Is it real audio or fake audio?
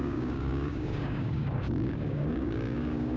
fake